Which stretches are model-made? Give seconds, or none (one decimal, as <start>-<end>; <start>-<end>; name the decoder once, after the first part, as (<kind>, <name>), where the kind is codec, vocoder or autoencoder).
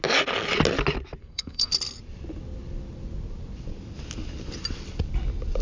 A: 1.2-1.7 (codec, SNAC)